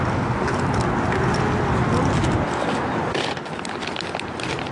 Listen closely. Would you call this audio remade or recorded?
recorded